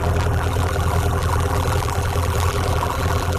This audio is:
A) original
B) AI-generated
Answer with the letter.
B